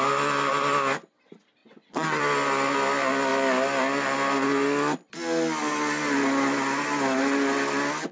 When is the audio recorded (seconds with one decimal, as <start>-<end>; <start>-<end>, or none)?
0.0-1.6; 2.2-8.1